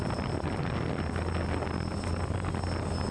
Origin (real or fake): real